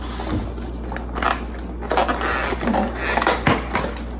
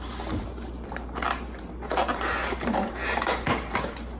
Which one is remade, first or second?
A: second